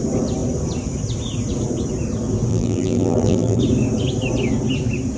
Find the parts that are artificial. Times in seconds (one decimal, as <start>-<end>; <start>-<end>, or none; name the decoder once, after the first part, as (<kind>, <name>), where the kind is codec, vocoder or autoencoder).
2.5-3.6 (vocoder, BigVGAN v2)